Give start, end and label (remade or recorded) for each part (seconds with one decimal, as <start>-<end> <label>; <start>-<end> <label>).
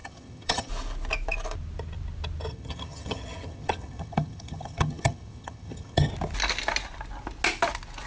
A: 0.0-0.7 remade; 0.7-2.5 recorded; 2.5-6.1 remade; 6.1-8.1 recorded